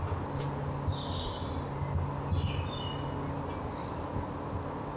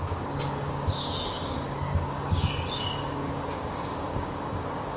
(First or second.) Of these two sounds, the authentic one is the first